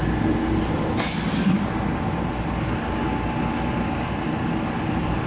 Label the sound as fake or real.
real